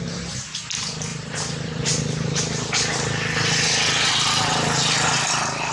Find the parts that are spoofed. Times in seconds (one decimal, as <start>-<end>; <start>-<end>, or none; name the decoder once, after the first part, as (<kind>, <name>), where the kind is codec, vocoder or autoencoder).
1.1-2.4 (vocoder, BigVGAN v2)